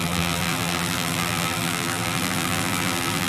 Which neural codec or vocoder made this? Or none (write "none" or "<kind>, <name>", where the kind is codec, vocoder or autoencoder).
vocoder, BigVGAN v2